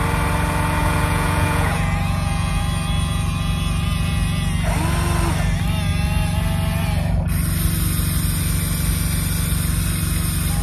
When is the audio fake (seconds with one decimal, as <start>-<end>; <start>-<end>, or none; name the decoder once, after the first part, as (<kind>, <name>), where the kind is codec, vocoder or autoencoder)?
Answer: 0.8-2.6 (vocoder, Vocos)